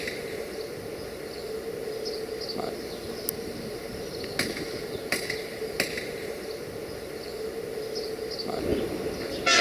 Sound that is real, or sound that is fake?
real